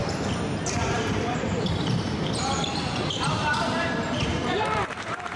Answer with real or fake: fake